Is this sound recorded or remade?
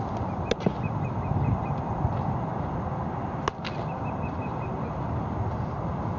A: recorded